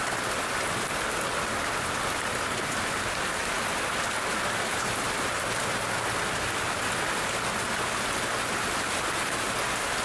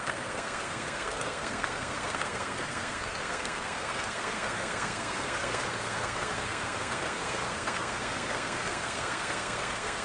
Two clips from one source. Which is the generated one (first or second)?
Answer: second